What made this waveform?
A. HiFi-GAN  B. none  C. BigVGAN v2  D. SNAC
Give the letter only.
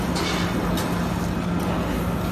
B